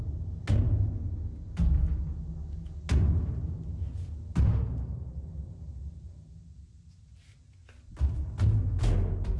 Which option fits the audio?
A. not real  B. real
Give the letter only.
B